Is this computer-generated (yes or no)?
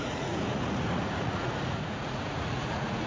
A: yes